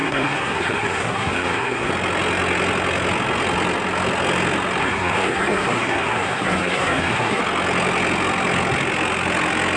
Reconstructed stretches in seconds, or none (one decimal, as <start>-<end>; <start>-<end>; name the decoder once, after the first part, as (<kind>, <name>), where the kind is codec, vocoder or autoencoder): 0.0-1.9 (codec, SNAC); 4.8-7.4